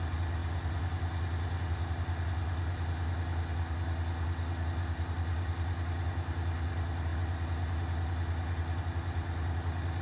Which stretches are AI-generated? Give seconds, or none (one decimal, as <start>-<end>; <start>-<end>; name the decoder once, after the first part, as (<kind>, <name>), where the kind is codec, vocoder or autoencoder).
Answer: none